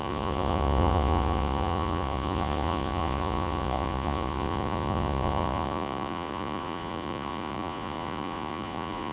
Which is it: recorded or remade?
remade